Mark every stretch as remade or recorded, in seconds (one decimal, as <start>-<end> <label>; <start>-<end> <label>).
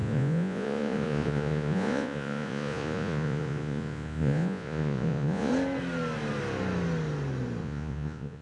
0.0-5.5 remade; 5.5-7.6 recorded; 7.6-8.4 remade